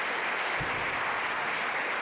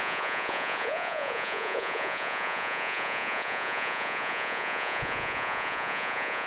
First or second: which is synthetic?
second